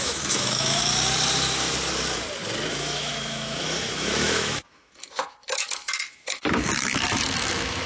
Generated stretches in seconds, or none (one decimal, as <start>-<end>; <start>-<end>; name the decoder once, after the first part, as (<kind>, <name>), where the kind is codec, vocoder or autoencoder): 0.0-0.8 (autoencoder, DAC-VAE); 2.7-7.9